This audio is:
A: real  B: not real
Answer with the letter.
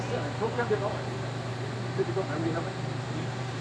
B